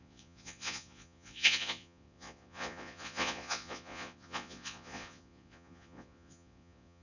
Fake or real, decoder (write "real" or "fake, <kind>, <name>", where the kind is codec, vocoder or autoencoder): fake, vocoder, Vocos